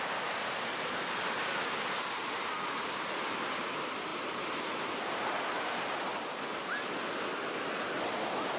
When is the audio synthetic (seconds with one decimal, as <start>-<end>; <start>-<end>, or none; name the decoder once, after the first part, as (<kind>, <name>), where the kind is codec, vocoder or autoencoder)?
none